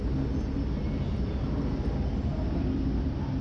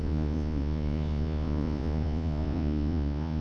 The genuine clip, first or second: first